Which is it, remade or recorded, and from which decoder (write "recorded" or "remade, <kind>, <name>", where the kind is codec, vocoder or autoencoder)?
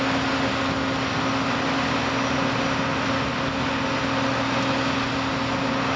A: recorded